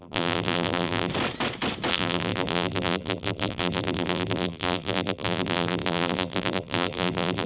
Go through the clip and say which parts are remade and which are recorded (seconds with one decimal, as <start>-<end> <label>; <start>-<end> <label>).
0.0-1.1 remade; 1.1-1.9 recorded; 1.9-7.5 remade